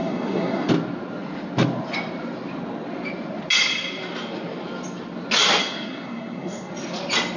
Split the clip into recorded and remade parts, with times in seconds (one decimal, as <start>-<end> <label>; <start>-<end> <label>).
0.0-0.7 remade; 0.7-5.6 recorded; 5.6-6.7 remade; 6.7-7.4 recorded